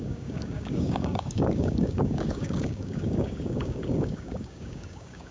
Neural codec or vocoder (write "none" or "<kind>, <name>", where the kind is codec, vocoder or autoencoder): codec, DAC